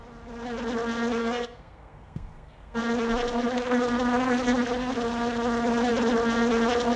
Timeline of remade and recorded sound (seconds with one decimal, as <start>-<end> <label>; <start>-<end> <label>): 0.0-1.2 recorded; 1.2-2.8 remade; 2.8-7.0 recorded